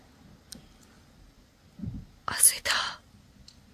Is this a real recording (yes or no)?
yes